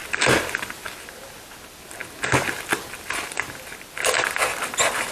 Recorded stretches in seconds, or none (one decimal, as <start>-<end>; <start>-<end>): 0.0-5.1